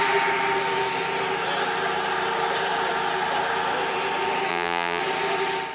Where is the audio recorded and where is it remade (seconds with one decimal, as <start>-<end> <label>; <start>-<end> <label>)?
0.0-4.5 recorded; 4.5-5.0 remade; 5.0-5.7 recorded